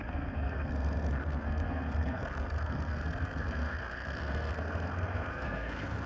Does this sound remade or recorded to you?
remade